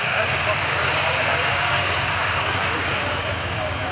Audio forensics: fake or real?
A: fake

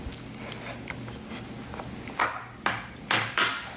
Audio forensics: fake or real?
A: real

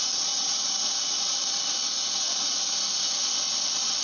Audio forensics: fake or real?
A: real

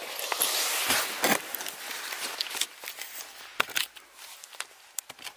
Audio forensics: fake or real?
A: real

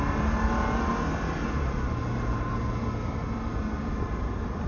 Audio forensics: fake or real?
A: real